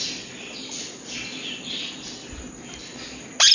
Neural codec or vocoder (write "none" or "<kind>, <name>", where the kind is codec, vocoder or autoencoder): none